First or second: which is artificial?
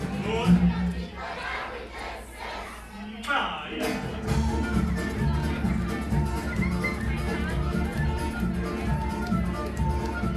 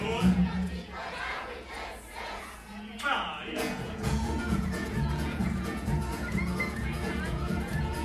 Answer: second